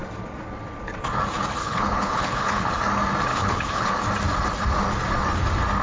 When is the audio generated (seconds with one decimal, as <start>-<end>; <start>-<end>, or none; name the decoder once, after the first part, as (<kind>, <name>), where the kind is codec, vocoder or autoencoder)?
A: 1.6-2.7 (codec, HILCodec); 3.3-3.9